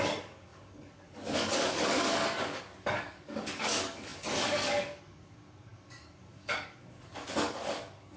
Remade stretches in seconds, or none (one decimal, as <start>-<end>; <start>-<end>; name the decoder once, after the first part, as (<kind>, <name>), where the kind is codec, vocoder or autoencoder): 0.0-8.2 (codec, DAC)